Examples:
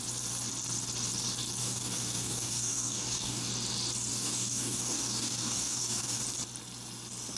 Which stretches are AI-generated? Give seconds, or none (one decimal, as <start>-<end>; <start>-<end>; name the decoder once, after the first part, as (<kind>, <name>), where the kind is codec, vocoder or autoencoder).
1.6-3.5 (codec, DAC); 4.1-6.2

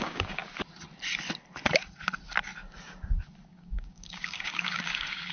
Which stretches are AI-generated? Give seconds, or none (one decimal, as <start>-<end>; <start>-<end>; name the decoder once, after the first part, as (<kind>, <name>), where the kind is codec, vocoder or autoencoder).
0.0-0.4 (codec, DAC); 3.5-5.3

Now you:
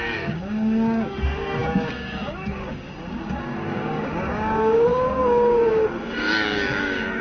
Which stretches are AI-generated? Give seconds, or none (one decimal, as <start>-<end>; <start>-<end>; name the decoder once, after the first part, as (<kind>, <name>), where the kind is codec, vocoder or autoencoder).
0.0-7.2 (codec, DAC)

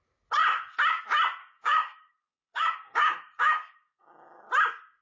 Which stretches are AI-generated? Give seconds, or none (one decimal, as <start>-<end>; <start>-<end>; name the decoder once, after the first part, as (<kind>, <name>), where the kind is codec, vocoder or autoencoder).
1.4-4.0 (codec, DAC)

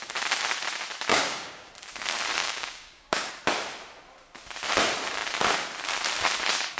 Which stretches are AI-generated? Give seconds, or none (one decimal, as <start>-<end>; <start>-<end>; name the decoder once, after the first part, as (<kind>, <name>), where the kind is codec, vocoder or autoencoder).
1.1-1.7 (codec, DAC); 2.4-3.3

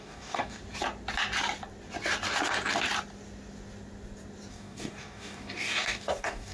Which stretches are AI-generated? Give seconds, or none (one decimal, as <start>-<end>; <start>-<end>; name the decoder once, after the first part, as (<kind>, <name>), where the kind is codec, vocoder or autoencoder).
0.0-0.6 (codec, DAC); 4.5-6.5

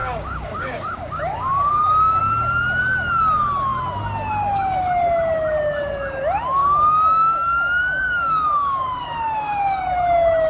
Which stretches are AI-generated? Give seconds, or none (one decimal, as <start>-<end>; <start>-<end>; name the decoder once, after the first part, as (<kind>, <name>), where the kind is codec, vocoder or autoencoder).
0.0-2.2 (codec, DAC); 6.6-9.8

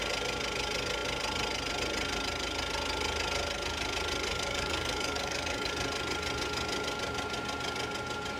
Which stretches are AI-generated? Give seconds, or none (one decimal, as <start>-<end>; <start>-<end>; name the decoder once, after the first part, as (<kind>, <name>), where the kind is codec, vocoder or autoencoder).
4.3-5.7 (codec, DAC)